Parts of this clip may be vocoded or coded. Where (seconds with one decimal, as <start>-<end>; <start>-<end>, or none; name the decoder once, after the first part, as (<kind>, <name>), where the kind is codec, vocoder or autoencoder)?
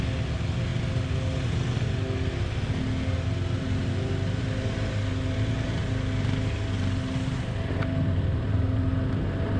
none